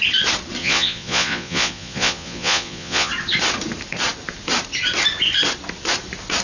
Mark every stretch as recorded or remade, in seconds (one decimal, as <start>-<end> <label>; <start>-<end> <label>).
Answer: 0.0-0.6 recorded; 0.6-3.1 remade; 3.1-6.4 recorded